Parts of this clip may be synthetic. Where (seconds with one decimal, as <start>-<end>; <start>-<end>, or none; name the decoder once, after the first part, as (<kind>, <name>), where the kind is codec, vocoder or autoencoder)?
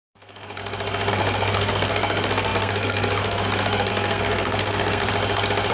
0.0-0.6 (codec, SNAC); 1.1-5.0